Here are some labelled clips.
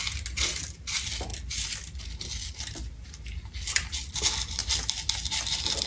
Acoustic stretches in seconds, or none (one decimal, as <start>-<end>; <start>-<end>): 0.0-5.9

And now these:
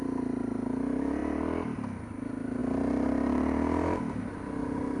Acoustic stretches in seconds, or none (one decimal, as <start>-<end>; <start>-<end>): 0.0-5.0

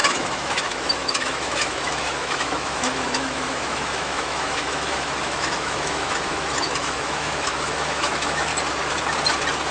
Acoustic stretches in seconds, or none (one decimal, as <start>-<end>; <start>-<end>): 8.5-9.7

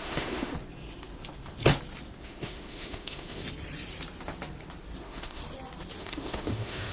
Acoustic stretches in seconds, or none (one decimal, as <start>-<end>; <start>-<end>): 0.5-2.2; 3.4-5.0; 5.4-6.0